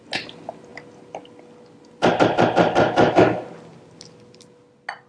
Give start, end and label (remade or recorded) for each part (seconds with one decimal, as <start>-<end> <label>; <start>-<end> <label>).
0.0-5.1 recorded